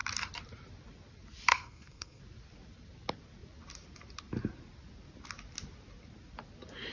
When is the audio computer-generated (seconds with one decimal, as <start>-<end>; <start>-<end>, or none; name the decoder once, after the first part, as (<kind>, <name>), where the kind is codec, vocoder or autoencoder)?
1.5-2.2 (codec, SNAC)

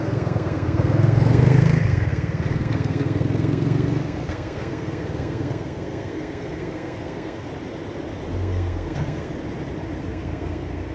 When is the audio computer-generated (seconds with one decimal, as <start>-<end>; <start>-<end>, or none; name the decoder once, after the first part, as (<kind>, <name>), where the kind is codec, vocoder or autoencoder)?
0.0-7.5 (codec, SNAC); 8.3-9.3; 10.0-10.9